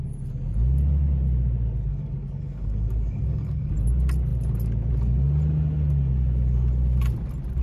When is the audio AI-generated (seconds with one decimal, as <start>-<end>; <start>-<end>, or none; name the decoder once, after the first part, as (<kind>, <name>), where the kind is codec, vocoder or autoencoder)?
1.9-3.7 (codec, DAC)